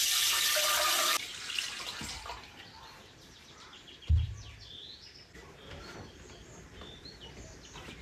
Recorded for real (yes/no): no